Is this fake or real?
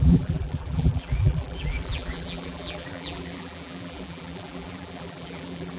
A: fake